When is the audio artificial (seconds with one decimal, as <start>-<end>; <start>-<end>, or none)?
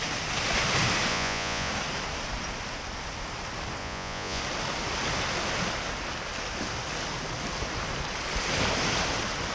1.1-1.7; 3.8-4.4